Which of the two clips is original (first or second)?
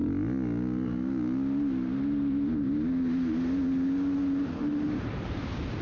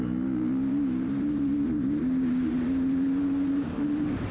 first